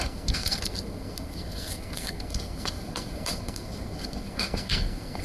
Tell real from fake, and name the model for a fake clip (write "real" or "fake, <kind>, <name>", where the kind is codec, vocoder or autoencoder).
fake, codec, SNAC